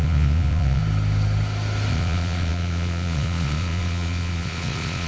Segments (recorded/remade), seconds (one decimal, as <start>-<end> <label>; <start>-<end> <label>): 0.0-0.8 remade; 0.8-1.9 recorded; 1.9-5.1 remade